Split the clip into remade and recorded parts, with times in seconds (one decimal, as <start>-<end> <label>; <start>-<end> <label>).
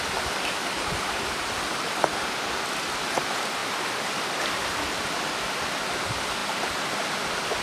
0.0-7.6 recorded